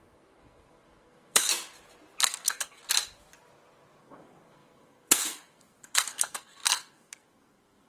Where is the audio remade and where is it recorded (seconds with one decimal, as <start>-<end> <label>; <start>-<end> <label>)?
0.0-1.5 remade; 1.5-2.2 recorded; 2.2-2.8 remade; 2.8-4.0 recorded; 4.0-7.9 remade